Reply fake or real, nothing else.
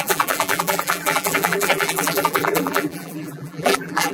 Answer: fake